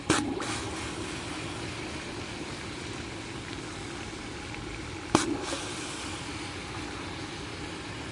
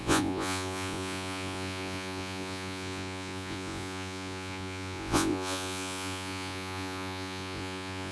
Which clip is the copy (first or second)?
second